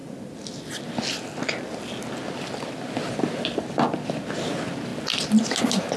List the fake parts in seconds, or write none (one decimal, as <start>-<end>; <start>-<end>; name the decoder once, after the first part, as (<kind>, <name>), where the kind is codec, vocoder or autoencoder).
none